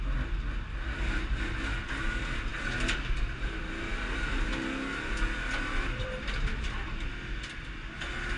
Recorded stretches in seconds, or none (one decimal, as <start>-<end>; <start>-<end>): 0.0-8.4